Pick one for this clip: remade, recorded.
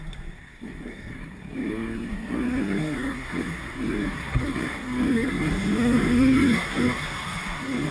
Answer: remade